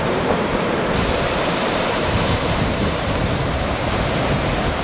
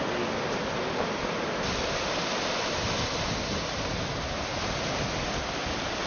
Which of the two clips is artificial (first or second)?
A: first